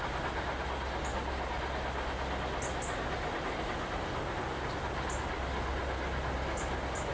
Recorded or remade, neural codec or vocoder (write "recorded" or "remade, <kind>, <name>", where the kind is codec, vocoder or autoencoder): recorded